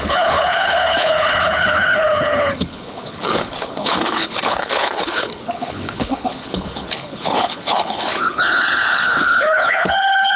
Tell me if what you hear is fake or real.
fake